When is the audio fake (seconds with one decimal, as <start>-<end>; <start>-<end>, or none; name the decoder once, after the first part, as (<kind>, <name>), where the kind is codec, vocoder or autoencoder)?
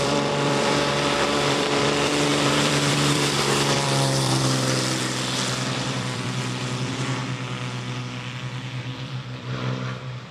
0.0-7.2 (vocoder, BigVGAN v2); 8.8-10.3